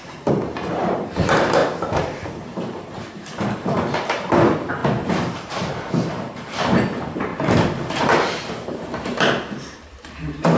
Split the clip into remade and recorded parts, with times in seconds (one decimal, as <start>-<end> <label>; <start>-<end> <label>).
0.0-7.3 remade; 7.3-8.0 recorded; 8.0-10.6 remade